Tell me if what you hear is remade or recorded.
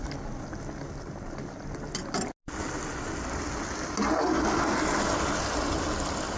recorded